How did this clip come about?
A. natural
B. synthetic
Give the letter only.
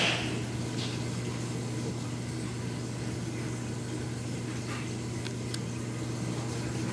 A